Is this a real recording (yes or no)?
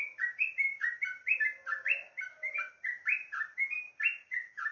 yes